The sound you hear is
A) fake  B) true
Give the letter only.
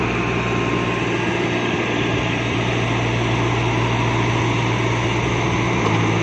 B